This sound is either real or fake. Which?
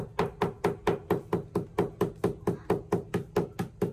real